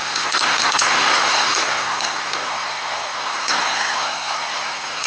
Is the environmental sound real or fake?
fake